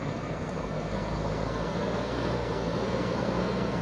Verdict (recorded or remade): remade